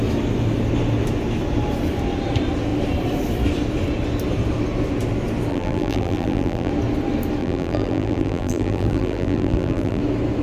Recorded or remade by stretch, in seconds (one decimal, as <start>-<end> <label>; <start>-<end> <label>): 0.0-5.5 recorded; 5.5-6.7 remade; 6.7-7.4 recorded; 7.4-10.0 remade; 10.0-10.4 recorded